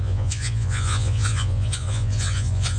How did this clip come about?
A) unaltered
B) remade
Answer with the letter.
B